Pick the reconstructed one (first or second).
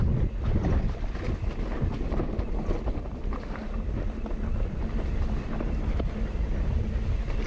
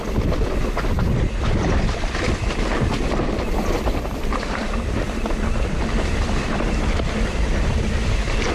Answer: second